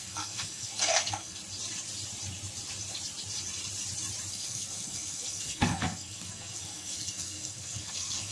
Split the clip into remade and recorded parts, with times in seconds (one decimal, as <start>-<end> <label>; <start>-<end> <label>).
0.0-1.4 remade; 1.4-4.3 recorded; 4.3-8.3 remade